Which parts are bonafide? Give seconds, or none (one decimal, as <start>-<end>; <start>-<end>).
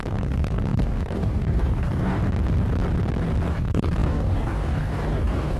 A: 2.2-3.5